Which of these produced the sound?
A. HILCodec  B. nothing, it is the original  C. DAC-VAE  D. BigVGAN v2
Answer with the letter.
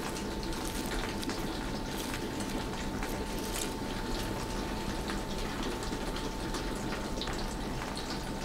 B